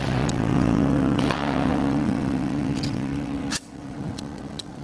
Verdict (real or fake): fake